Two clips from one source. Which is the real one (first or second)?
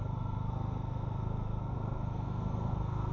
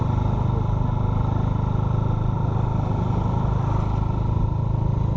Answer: second